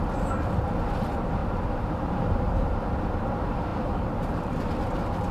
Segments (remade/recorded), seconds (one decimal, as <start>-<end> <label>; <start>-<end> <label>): 0.0-1.4 recorded; 1.4-3.0 remade; 3.0-3.7 recorded; 3.7-4.8 remade; 4.8-5.3 recorded